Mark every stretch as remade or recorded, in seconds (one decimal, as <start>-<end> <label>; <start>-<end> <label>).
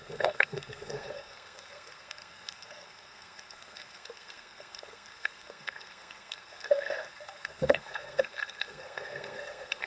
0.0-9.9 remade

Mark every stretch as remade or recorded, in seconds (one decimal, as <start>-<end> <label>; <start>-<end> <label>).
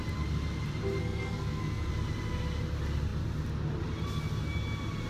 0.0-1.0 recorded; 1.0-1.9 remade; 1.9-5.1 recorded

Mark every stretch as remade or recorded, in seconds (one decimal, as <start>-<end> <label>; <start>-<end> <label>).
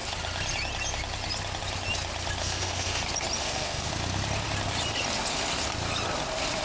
0.0-2.4 recorded; 2.4-3.0 remade; 3.0-3.4 recorded; 3.4-3.9 remade; 3.9-6.6 recorded